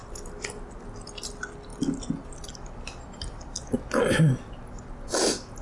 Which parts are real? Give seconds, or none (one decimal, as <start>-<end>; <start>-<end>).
0.0-5.6